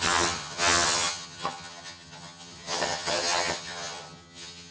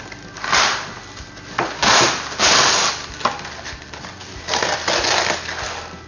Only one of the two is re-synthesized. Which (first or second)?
first